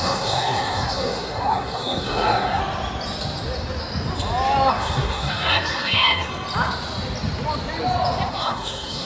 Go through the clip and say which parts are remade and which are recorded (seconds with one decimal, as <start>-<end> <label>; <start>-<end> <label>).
0.0-2.6 remade; 2.6-4.7 recorded; 4.7-6.3 remade; 6.3-8.3 recorded; 8.3-9.0 remade